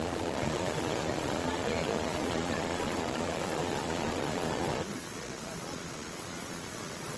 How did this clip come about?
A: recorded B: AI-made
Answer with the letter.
B